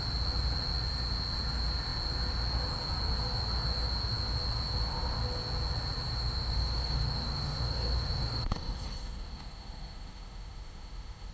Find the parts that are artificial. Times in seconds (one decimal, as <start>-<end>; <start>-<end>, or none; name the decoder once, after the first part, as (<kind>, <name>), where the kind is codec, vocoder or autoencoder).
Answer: 6.1-11.3 (autoencoder, DAC-VAE)